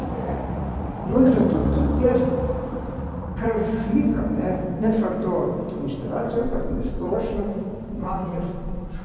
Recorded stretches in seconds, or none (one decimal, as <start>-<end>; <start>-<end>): 3.6-6.7